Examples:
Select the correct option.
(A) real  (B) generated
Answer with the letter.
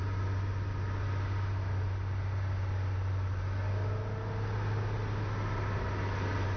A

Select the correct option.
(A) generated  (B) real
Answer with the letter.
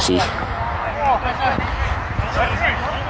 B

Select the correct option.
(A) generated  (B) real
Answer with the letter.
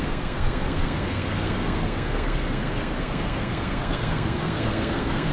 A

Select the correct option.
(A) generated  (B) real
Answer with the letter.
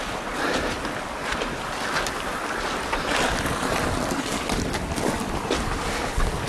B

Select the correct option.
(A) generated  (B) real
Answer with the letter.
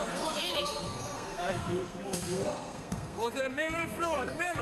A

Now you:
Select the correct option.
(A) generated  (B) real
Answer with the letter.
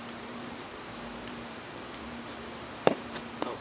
A